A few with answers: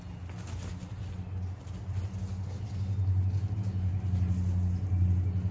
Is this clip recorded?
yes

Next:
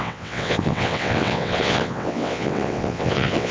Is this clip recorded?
no